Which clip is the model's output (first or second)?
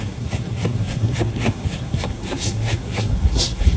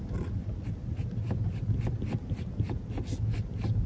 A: first